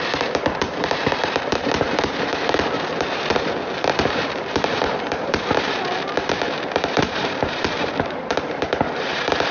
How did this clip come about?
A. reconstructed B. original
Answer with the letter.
A